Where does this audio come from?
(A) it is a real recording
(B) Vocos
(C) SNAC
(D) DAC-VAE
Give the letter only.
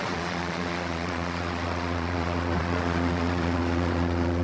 B